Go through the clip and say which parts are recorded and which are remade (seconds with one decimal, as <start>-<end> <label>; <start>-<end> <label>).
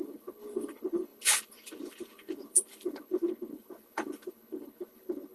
0.0-5.3 remade